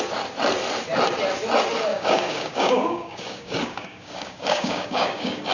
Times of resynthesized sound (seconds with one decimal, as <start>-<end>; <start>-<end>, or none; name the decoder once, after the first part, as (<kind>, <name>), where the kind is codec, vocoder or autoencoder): 1.9-5.5 (codec, DAC)